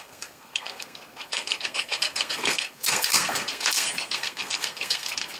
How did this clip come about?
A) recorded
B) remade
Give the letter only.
B